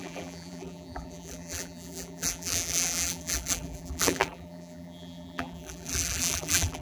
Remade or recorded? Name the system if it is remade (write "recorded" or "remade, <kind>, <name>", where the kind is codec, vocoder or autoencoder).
remade, vocoder, BigVGAN v2